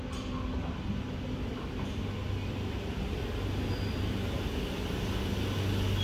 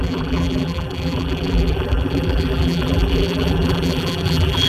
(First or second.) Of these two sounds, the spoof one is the second